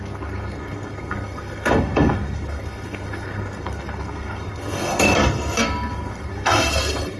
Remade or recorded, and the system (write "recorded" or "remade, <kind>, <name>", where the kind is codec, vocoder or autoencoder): remade, codec, SNAC